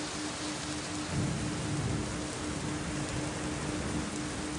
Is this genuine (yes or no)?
yes